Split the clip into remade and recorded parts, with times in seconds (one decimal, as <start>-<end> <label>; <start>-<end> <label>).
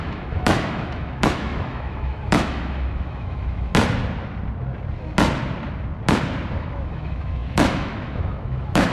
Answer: 0.0-3.7 remade; 3.7-6.6 recorded; 6.6-8.9 remade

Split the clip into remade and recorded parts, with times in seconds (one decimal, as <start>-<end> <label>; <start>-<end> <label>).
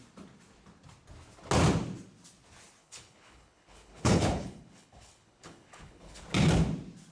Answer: 0.0-2.8 recorded; 2.8-6.2 remade; 6.2-7.1 recorded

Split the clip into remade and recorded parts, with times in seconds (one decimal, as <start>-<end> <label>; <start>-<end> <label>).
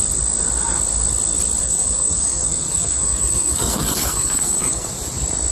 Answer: 0.0-1.6 recorded; 1.6-4.9 remade; 4.9-5.5 recorded